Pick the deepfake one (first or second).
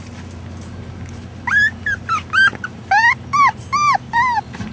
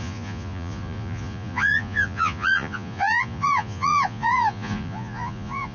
second